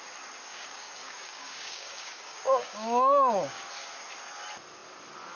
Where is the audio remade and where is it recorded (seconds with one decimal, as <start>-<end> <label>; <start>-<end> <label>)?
0.0-0.5 recorded; 0.5-3.7 remade; 3.7-5.4 recorded